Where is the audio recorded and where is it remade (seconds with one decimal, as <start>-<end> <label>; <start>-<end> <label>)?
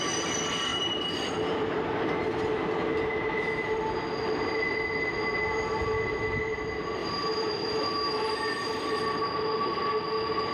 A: 0.0-0.7 recorded; 0.7-1.2 remade; 1.2-7.0 recorded; 7.0-7.9 remade; 7.9-10.5 recorded